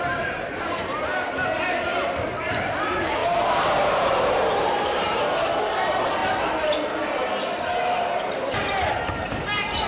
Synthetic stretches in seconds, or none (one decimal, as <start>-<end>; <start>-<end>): 1.9-2.8; 3.2-5.2